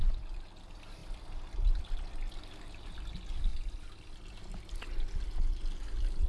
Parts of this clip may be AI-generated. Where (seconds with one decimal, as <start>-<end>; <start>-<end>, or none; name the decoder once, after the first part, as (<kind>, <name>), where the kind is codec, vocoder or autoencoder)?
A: none